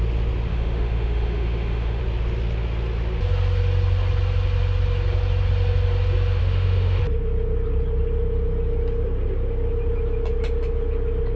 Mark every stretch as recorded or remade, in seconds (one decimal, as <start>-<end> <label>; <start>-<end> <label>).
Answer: 0.0-0.5 recorded; 0.5-2.0 remade; 2.0-6.4 recorded; 6.4-7.0 remade; 7.0-11.4 recorded